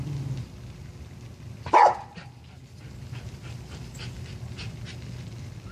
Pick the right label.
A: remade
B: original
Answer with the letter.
B